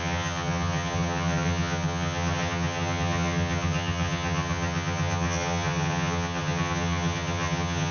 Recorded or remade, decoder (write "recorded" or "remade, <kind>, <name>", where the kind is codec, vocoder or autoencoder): remade, vocoder, HiFi-GAN